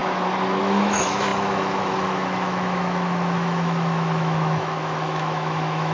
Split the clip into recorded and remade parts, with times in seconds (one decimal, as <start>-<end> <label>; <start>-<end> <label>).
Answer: 0.0-0.6 recorded; 0.6-5.9 remade